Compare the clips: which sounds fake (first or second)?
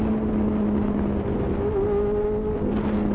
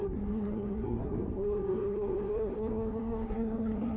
second